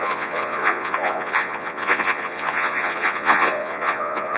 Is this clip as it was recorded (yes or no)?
no